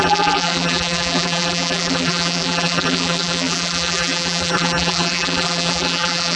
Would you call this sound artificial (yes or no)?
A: yes